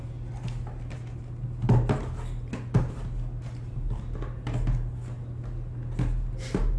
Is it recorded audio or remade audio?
recorded